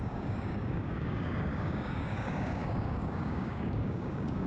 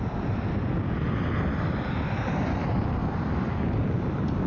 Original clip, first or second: second